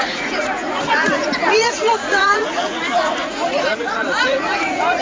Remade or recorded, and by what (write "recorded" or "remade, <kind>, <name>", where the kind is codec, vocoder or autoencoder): remade, vocoder, Vocos